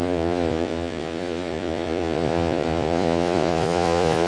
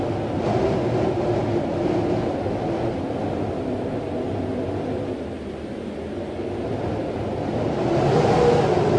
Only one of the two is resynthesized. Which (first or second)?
first